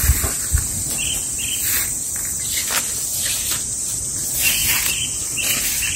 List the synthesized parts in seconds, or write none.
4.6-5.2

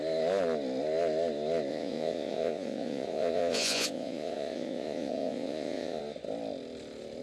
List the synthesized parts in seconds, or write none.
1.7-6.0

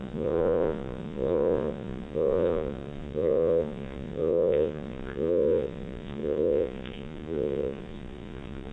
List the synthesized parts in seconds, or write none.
0.0-8.7

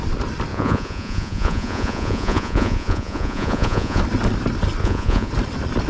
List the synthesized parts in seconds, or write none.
0.5-4.0; 4.8-5.3

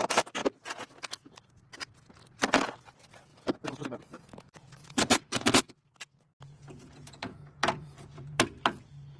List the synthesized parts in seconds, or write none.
0.4-2.7; 3.3-8.4

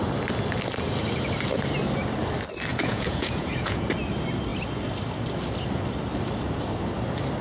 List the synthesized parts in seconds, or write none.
2.7-3.9